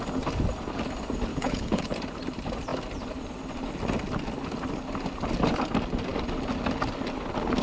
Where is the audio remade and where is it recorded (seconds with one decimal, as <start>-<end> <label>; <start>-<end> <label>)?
0.0-1.3 recorded; 1.3-1.8 remade; 1.8-7.6 recorded